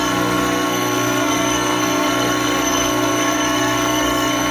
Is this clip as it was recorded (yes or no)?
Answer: no